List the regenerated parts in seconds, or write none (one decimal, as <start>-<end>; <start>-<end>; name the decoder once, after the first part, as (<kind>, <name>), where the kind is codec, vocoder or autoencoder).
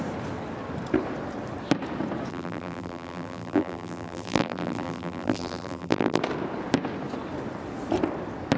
2.3-6.2 (vocoder, BigVGAN v2)